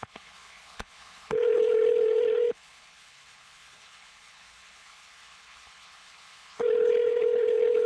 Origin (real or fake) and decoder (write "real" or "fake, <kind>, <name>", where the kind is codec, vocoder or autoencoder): fake, codec, HILCodec